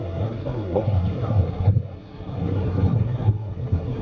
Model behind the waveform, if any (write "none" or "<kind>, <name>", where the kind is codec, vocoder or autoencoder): codec, SNAC